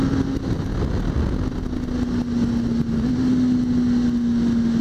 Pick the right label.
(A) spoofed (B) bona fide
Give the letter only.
B